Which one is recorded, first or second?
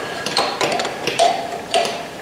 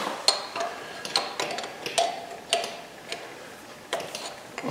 second